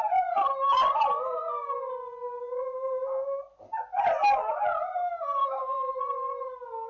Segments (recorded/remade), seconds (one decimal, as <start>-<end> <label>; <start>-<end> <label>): 0.0-5.4 recorded; 5.4-5.9 remade; 5.9-6.9 recorded